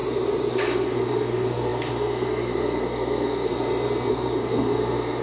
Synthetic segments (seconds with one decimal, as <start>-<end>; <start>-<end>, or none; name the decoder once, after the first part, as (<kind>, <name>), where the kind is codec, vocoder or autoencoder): 0.5-3.5 (codec, SNAC); 4.1-5.2